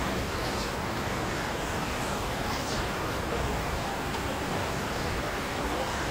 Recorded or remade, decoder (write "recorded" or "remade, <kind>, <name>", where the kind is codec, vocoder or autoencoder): remade, codec, DAC